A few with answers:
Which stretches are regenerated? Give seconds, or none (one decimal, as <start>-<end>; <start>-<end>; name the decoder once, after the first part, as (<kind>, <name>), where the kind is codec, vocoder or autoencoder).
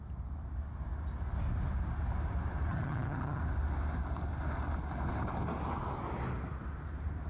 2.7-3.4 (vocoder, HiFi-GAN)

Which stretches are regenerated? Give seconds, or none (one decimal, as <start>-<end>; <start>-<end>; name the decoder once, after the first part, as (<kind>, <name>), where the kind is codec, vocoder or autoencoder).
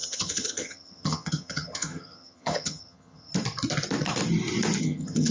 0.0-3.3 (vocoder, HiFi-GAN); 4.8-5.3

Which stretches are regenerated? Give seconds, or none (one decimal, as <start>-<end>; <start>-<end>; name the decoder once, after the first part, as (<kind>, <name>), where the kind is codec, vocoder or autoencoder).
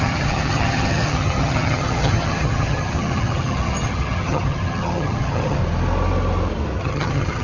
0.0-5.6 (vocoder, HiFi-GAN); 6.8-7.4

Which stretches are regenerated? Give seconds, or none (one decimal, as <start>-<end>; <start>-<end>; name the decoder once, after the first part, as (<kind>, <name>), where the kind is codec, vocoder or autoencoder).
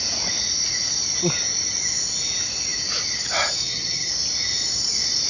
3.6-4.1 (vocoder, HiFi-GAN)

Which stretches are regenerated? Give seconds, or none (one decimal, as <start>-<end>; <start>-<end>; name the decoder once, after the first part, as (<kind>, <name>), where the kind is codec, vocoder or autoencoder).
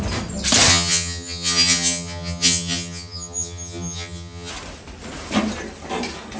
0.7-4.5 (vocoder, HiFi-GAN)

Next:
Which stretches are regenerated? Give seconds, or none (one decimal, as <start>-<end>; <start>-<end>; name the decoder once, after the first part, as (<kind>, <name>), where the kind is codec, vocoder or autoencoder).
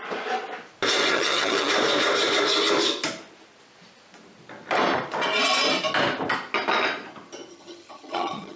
1.1-1.7 (vocoder, HiFi-GAN); 7.5-8.6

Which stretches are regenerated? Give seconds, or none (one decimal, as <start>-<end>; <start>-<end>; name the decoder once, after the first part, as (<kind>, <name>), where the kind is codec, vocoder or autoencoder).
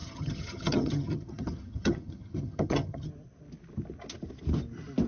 0.0-3.1 (vocoder, HiFi-GAN)